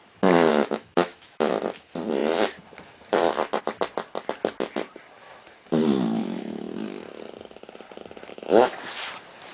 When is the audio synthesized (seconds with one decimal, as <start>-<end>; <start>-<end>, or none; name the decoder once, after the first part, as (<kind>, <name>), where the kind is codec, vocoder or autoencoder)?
0.5-1.5 (autoencoder, DAC-VAE); 6.2-7.2; 8.3-8.8